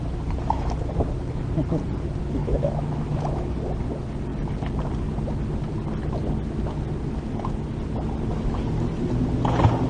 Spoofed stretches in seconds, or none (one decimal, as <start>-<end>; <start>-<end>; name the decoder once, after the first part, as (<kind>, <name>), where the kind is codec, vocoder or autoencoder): 2.4-3.6 (autoencoder, DAC-VAE)